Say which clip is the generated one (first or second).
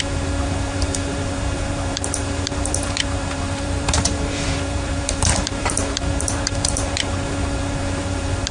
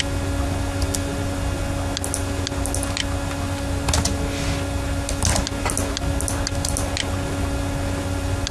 first